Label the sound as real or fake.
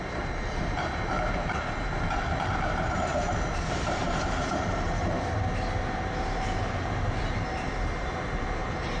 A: fake